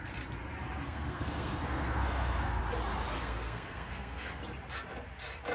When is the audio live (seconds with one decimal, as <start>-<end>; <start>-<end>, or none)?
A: 0.0-0.8; 2.6-3.2; 4.4-5.5